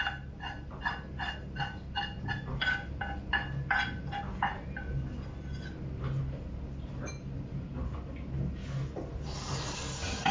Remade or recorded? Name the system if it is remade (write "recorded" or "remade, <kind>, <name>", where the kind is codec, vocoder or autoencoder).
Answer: recorded